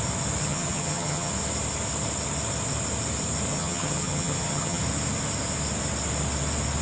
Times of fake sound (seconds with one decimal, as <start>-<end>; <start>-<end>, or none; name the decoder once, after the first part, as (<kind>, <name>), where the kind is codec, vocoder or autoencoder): 0.4-1.3 (vocoder, HiFi-GAN); 3.5-4.8